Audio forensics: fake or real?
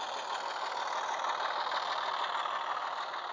real